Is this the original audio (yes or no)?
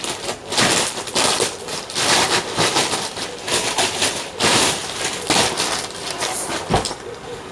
no